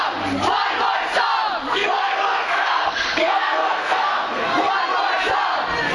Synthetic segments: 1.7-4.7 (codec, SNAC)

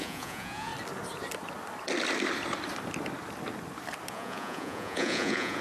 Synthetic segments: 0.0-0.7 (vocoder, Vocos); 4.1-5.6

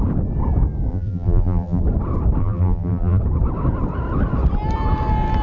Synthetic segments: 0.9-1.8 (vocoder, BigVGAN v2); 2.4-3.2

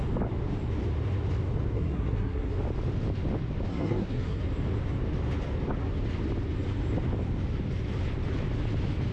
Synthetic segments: 1.7-2.5 (codec, SNAC); 3.7-4.4